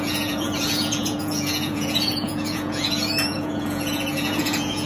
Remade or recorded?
remade